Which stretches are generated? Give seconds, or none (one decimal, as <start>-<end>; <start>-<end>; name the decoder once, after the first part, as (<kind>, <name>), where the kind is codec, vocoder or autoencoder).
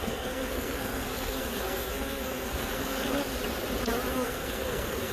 0.0-3.2 (codec, SNAC); 4.1-5.1